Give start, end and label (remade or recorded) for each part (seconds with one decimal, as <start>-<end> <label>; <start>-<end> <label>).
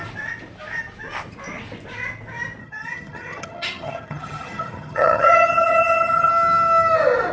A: 0.0-2.6 recorded; 2.6-6.3 remade; 6.3-7.3 recorded